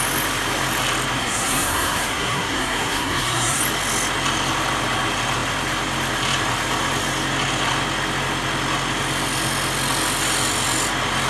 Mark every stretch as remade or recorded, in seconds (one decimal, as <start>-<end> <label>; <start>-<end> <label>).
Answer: 0.0-1.2 recorded; 1.2-3.6 remade; 3.6-11.3 recorded